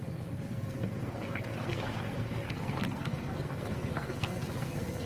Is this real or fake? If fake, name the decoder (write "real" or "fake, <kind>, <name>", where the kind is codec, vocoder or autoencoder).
fake, codec, SNAC